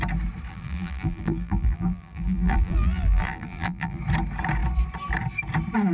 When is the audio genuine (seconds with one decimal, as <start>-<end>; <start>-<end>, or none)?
0.0-0.5; 4.0-5.9